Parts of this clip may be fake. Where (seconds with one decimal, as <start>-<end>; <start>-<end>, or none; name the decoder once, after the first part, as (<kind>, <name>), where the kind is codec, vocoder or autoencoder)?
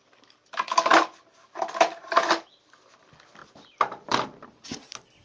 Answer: none